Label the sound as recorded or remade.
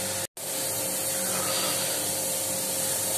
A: recorded